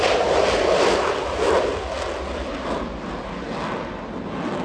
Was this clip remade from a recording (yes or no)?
no